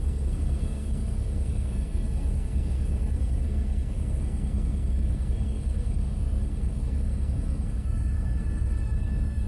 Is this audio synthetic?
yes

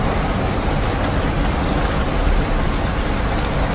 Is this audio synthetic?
no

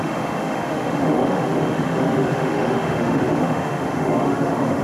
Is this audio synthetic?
yes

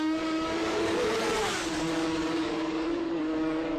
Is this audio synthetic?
yes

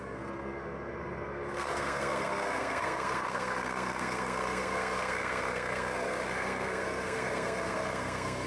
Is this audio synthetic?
yes